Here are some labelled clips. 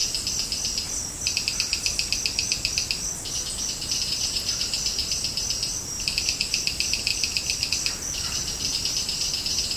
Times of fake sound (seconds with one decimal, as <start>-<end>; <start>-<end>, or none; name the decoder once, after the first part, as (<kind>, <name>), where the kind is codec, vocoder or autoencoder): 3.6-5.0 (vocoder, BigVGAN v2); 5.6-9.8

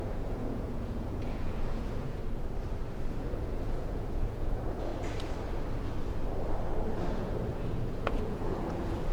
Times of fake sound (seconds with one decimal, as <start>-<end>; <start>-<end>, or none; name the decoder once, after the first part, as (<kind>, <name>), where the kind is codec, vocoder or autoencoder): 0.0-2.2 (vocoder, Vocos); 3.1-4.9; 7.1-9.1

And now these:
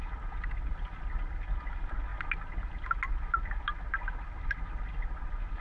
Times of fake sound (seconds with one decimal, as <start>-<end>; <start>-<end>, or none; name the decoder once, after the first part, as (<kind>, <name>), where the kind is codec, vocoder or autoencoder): none

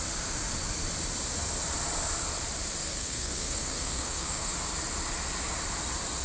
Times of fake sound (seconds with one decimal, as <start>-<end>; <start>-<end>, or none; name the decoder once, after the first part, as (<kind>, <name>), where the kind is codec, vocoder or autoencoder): 2.8-4.5 (codec, SNAC)

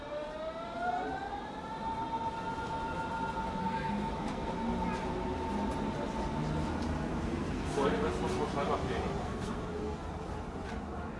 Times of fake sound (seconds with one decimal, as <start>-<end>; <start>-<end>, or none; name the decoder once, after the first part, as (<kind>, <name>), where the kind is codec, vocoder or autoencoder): 3.6-4.5 (codec, SNAC); 7.1-8.1; 9.2-10.1